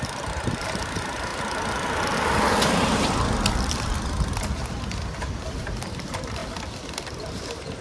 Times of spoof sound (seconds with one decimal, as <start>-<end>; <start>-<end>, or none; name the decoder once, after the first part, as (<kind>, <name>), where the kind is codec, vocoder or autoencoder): 0.0-1.3 (vocoder, BigVGAN v2); 5.6-6.4; 7.1-7.8